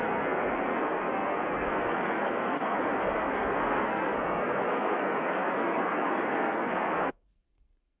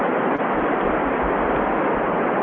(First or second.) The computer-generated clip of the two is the first